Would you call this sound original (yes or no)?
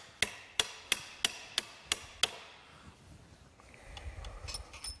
yes